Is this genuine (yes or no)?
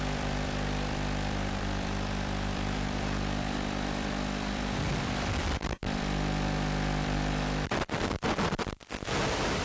no